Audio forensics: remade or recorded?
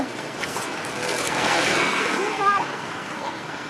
remade